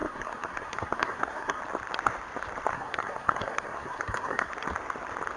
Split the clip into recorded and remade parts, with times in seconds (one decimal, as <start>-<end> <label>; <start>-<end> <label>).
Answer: 0.0-1.6 remade; 1.6-2.7 recorded; 2.7-4.5 remade; 4.5-5.4 recorded